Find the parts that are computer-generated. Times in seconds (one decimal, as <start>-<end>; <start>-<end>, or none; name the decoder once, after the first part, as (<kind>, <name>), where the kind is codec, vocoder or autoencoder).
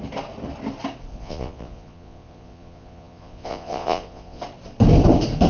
1.1-4.4 (vocoder, Vocos)